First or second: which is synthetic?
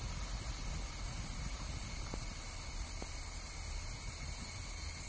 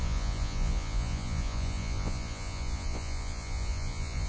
second